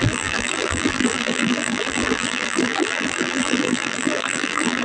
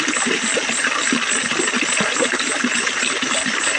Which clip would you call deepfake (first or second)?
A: first